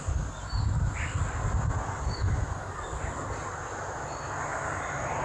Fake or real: real